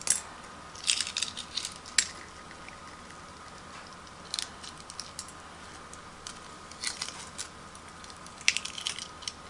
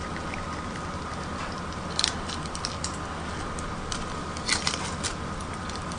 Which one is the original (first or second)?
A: first